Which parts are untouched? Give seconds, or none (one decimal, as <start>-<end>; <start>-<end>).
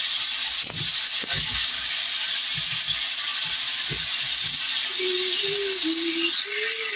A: 0.0-1.2; 1.8-7.0